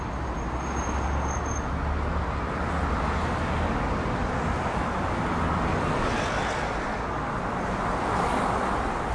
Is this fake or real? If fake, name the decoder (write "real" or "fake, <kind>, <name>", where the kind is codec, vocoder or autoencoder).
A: real